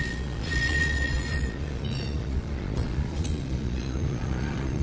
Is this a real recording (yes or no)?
no